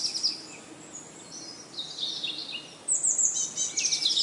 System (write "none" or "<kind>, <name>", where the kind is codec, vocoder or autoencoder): none